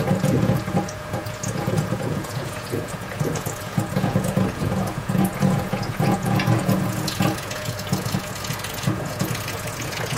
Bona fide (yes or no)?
no